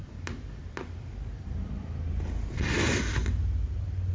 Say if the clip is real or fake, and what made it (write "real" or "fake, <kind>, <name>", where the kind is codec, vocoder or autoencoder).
real